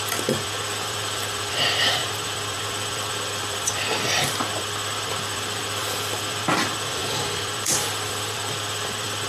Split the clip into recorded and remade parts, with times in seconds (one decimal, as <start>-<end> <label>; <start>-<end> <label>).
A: 0.0-9.3 remade